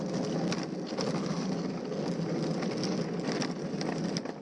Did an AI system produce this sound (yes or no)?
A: no